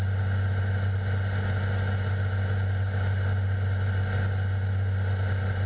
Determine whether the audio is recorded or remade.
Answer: recorded